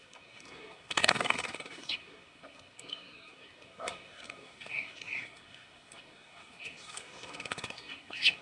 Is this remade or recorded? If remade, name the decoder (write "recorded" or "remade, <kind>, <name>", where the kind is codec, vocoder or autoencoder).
remade, codec, SNAC